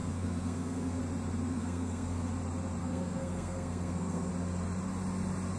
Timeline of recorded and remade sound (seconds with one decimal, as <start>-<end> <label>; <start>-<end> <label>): 0.0-1.0 remade; 1.0-1.5 recorded; 1.5-2.3 remade; 2.3-2.8 recorded; 2.8-4.3 remade; 4.3-5.6 recorded